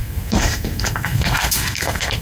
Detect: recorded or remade remade